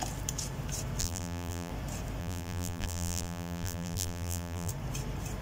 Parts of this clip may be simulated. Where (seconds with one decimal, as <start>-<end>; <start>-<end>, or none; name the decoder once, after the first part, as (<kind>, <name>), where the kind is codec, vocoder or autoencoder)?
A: 1.0-1.7 (vocoder, BigVGAN v2); 2.2-4.7

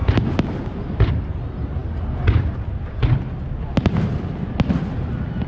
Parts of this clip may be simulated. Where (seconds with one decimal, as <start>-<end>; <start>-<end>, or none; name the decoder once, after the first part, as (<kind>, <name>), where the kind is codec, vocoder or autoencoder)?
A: none

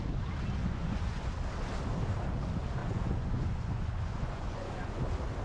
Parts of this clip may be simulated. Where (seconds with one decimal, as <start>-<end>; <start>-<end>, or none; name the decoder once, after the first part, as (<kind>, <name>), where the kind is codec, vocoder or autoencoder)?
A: 0.6-1.3 (vocoder, Vocos); 2.8-5.0

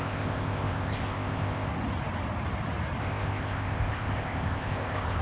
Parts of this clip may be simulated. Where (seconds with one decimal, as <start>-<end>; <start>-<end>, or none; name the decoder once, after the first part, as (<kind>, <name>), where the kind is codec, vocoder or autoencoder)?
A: 0.0-1.7 (codec, ZipCodec); 3.0-5.2